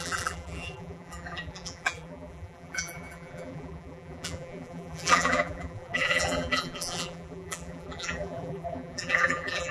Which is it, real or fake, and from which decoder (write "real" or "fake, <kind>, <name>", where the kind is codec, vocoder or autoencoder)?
fake, vocoder, BigVGAN v2